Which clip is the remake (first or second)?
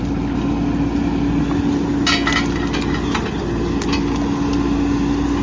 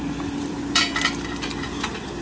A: second